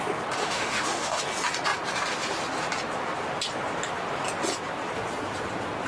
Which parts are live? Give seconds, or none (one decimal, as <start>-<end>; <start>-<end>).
0.0-0.4; 1.2-5.9